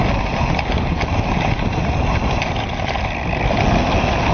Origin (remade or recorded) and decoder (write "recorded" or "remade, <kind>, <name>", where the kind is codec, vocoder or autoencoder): recorded